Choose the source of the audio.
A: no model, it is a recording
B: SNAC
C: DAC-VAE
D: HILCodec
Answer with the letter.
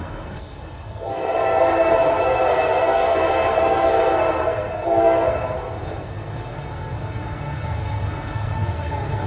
B